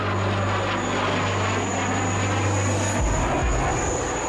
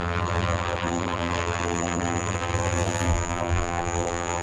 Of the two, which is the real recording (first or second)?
first